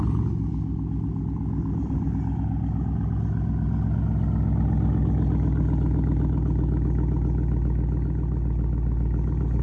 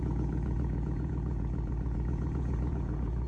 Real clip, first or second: first